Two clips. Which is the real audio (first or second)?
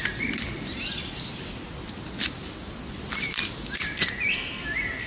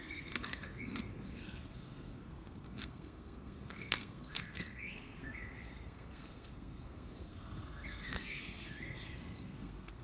first